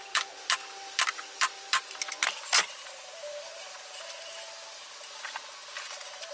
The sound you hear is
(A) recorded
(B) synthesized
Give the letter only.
B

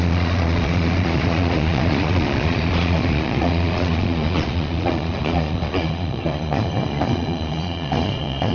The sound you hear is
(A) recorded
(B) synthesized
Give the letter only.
B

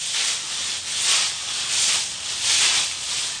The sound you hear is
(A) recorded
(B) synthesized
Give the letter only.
A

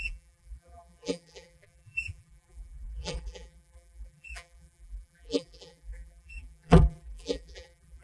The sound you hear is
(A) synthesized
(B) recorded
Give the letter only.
A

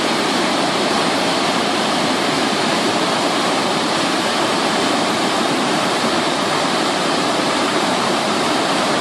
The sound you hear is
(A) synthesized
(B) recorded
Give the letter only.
A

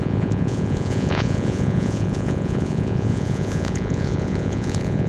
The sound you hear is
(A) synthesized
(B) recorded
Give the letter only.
A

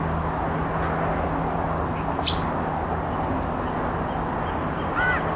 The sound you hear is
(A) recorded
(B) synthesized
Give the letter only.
A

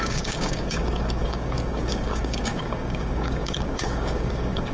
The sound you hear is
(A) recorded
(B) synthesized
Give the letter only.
B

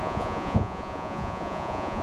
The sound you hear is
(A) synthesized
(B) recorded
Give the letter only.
A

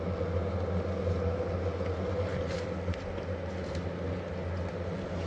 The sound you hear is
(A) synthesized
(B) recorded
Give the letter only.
B